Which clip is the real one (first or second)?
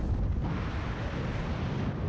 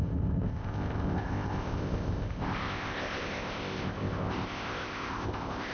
first